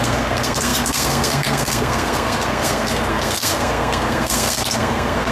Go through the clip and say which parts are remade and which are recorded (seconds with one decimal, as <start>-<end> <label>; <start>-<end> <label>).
0.0-5.3 remade